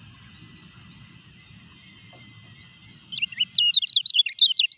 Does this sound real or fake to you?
real